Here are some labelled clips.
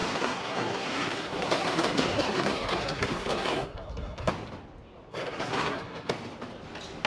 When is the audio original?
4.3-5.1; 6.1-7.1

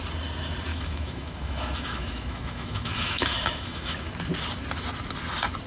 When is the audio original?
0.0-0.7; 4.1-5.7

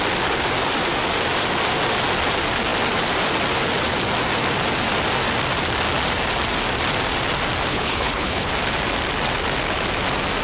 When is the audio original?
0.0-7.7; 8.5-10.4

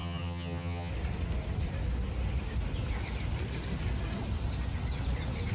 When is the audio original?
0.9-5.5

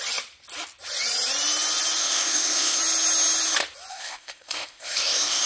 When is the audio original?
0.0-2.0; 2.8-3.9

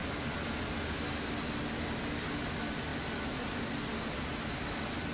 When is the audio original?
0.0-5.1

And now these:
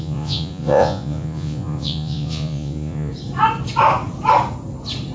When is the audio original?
3.1-5.1